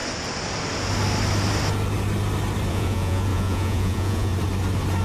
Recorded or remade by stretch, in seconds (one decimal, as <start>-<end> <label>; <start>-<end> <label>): 0.0-2.7 recorded; 2.7-4.3 remade; 4.3-5.0 recorded